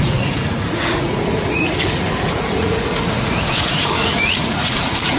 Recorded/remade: remade